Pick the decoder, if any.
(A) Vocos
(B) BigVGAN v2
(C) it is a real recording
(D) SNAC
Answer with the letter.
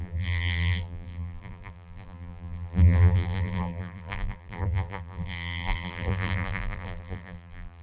B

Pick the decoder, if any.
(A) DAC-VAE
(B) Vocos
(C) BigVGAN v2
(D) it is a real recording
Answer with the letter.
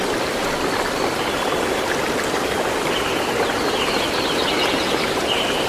D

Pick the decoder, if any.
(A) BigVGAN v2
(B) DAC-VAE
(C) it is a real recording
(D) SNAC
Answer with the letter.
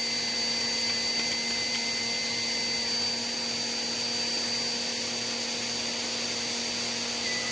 C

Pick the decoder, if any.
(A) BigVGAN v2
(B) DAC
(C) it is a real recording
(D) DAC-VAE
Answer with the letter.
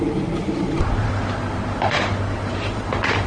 A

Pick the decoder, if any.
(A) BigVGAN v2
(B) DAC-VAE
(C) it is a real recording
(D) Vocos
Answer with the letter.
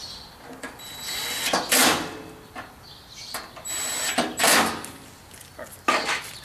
C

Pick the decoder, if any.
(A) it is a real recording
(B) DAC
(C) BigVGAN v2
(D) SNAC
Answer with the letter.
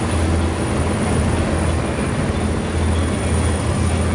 A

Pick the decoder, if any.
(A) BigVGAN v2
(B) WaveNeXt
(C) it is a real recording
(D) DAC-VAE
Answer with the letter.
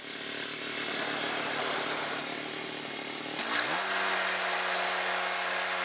C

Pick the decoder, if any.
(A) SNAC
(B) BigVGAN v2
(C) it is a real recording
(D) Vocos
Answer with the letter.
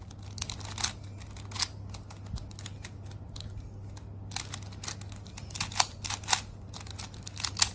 C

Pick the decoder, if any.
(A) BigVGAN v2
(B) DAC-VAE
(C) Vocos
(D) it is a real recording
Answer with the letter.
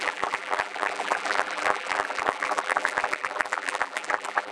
A